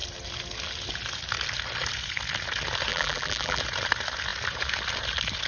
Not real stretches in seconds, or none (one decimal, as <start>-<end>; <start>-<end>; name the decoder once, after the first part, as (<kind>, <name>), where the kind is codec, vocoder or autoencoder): 2.9-3.6 (vocoder, BigVGAN v2)